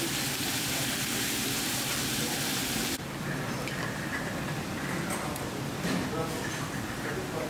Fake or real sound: fake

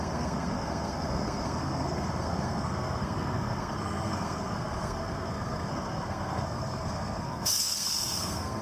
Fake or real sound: fake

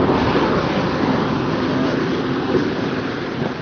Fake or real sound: real